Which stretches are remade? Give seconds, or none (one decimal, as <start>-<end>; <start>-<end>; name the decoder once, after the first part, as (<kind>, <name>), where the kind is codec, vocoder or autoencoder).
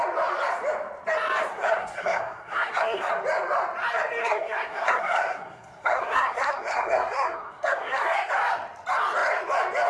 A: 1.5-3.1 (codec, SNAC); 4.2-8.3